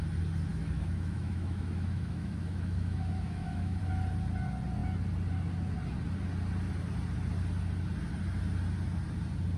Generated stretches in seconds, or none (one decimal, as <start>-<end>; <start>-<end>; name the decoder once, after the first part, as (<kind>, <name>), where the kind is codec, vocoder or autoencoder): 0.5-3.8 (autoencoder, DAC-VAE)